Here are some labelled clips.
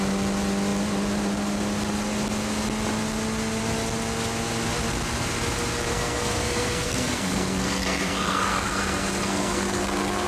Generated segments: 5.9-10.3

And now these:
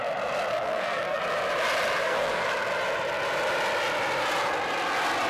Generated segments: 0.5-1.2; 2.0-2.5

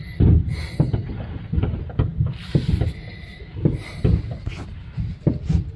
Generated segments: none

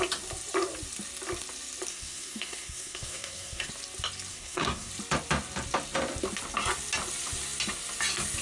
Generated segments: 1.9-3.7; 4.3-4.9